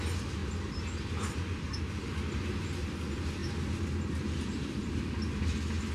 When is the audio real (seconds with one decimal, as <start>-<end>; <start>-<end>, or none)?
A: 0.0-5.9

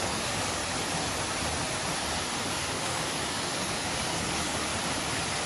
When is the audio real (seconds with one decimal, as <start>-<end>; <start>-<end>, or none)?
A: 0.6-2.4; 4.7-5.5

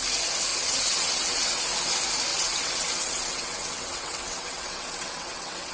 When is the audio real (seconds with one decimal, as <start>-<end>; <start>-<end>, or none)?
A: 0.0-0.5; 1.6-2.3

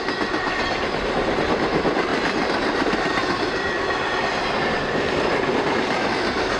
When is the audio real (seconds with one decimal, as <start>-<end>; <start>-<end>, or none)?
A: 0.0-2.1; 6.1-6.6